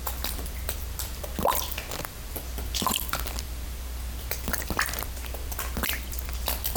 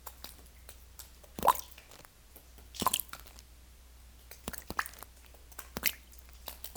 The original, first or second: second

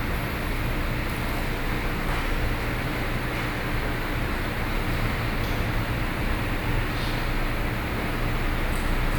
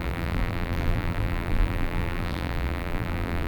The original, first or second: first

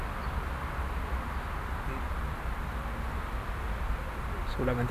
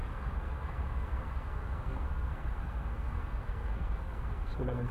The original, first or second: first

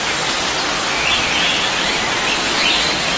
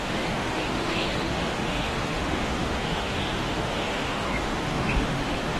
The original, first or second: first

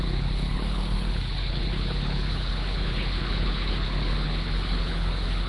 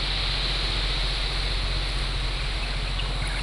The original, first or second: second